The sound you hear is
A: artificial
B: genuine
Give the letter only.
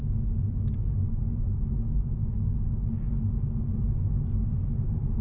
B